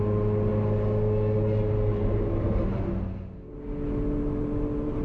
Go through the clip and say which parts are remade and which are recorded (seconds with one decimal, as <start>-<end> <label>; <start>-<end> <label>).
0.0-5.0 recorded